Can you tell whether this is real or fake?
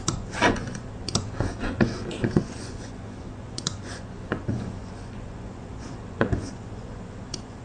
fake